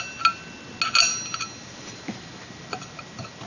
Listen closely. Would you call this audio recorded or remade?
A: recorded